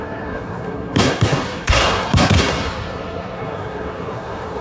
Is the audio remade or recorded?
remade